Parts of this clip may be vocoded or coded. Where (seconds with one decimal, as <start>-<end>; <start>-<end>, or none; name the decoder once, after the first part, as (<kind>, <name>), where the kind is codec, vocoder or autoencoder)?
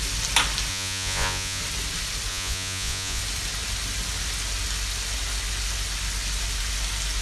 0.7-1.6 (vocoder, Vocos); 2.3-3.2